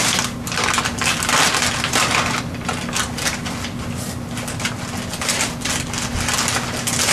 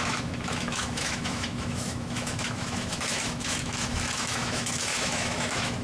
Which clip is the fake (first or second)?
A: second